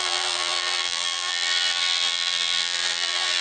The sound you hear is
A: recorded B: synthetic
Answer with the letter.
B